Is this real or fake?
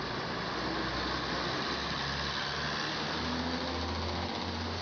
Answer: real